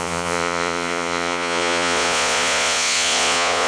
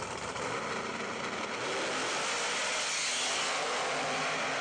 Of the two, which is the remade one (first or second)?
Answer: first